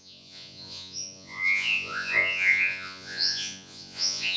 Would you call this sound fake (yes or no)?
yes